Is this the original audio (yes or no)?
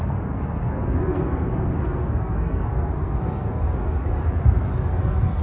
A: no